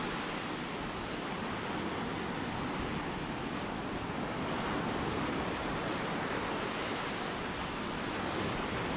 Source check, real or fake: real